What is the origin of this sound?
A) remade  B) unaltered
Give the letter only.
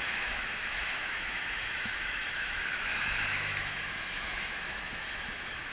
A